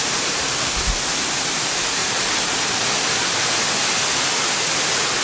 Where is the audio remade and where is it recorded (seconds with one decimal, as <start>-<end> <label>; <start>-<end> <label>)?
0.0-1.1 remade; 1.1-5.2 recorded